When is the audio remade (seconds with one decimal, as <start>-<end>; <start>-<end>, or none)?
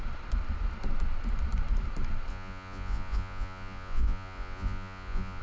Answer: 2.3-5.4